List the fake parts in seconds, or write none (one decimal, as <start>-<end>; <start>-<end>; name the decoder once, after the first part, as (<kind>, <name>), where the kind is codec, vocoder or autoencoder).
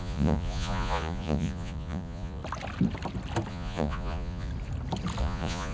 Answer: 0.0-2.4 (vocoder, Vocos); 3.5-4.5; 5.2-5.7